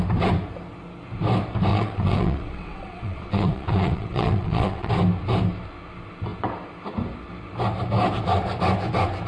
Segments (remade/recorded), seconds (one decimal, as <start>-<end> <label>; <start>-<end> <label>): 0.0-1.7 recorded; 1.7-4.9 remade; 4.9-9.3 recorded